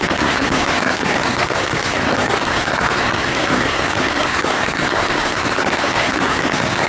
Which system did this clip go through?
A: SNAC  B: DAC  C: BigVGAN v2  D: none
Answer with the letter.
A